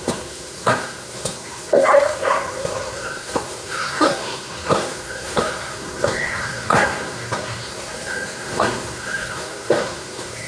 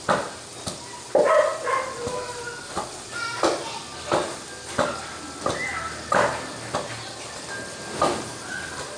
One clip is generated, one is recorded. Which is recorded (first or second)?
second